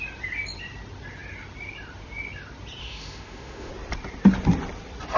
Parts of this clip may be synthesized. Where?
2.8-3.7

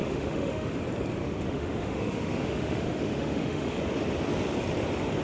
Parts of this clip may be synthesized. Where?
0.0-0.7; 1.2-3.8

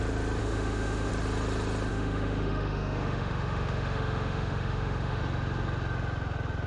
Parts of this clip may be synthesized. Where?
0.4-1.1; 1.9-5.2

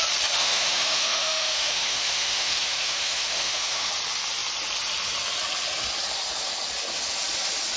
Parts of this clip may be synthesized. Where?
0.4-3.9

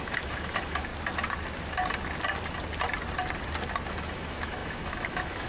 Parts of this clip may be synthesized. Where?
0.0-0.9; 3.9-5.5

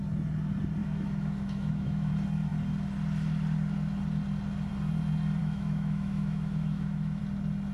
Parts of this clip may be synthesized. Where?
0.8-2.1; 5.4-7.2